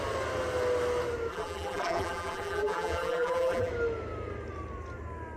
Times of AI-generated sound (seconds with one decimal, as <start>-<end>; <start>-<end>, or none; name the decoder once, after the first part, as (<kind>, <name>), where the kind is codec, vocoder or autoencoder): 1.3-3.7 (vocoder, BigVGAN v2)